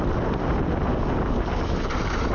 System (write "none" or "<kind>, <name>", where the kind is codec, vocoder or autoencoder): none